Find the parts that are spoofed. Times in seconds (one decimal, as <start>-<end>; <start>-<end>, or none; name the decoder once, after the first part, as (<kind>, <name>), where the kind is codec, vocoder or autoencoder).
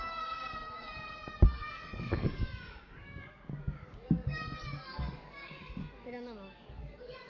0.0-7.3 (codec, DAC)